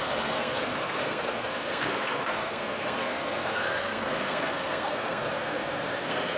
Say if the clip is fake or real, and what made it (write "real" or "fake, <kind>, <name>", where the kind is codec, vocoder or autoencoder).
fake, codec, SNAC